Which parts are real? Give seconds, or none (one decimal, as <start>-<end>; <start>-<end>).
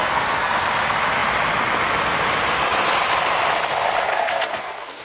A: 0.6-4.1